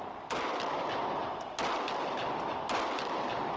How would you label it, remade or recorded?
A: recorded